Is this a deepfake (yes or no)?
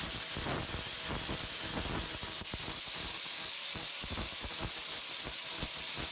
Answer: no